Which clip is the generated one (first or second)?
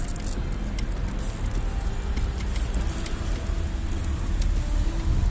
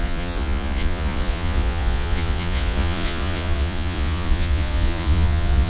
second